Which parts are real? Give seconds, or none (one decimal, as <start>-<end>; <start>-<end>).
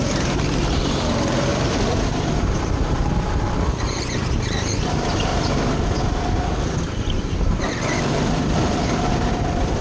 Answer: 5.3-8.0